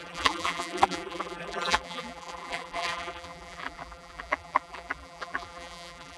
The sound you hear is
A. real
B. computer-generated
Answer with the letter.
B